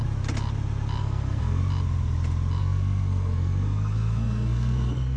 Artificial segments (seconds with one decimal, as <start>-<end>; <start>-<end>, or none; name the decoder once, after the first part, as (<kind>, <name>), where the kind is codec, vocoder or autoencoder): 1.0-1.6 (codec, SNAC); 2.6-5.2